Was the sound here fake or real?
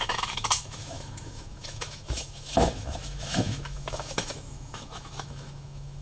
fake